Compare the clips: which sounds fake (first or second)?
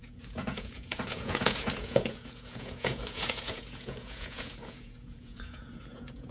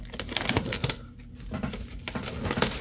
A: first